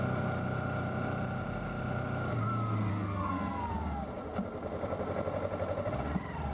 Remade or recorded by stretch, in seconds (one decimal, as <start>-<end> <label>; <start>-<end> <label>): 0.0-2.9 recorded; 2.9-3.7 remade; 3.7-6.5 recorded